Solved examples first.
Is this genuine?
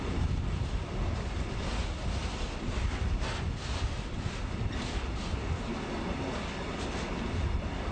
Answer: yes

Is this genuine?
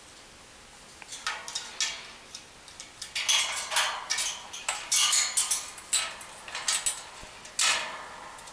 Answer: yes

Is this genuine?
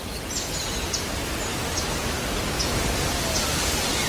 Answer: yes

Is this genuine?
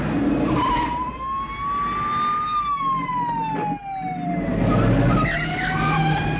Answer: yes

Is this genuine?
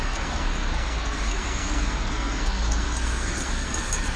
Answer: no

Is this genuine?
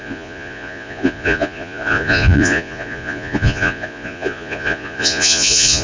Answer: no